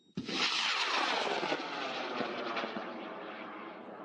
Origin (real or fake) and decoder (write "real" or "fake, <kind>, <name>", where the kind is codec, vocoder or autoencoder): fake, vocoder, BigVGAN v2